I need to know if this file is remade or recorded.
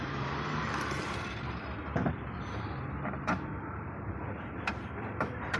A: remade